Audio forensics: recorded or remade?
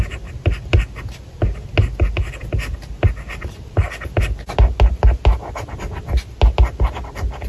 recorded